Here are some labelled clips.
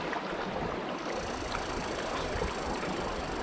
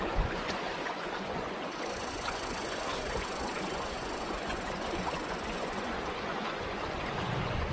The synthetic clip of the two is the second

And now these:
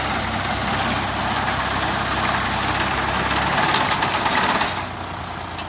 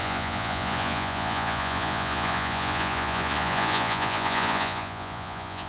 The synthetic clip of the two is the second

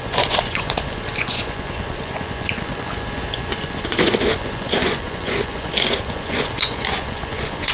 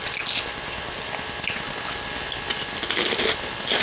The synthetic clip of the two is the first